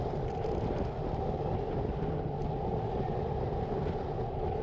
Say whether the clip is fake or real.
real